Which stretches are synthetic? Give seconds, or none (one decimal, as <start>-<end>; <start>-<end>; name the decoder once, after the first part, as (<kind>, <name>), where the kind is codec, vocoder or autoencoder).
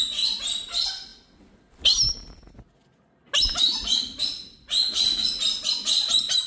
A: none